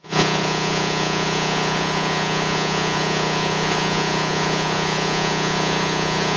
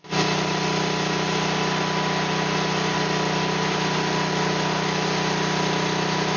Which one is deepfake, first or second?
first